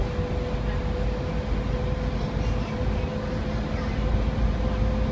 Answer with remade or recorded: recorded